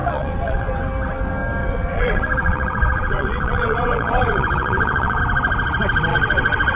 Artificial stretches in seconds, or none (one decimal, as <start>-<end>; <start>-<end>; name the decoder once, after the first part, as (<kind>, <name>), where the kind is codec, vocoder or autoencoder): 0.0-0.7 (vocoder, WaveNeXt); 1.6-5.2; 6.1-6.8